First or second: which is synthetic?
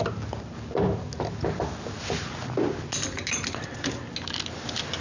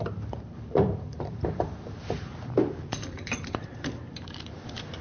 second